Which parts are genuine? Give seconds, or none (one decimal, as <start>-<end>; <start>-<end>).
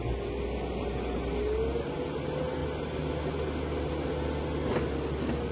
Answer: 0.0-5.5